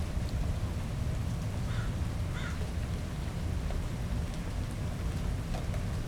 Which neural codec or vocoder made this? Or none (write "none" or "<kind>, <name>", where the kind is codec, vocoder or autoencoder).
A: vocoder, BigVGAN v2